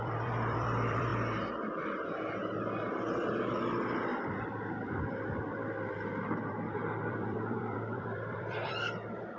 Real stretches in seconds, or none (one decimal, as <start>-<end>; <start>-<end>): 1.1-4.4